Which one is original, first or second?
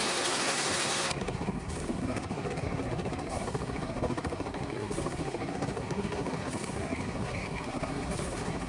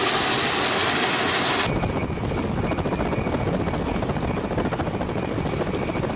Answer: second